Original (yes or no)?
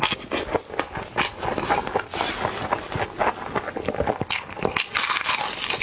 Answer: yes